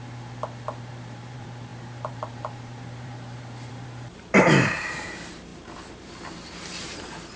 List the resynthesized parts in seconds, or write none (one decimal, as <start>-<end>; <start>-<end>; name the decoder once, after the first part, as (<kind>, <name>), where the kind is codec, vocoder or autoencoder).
0.8-7.4 (vocoder, BigVGAN v2)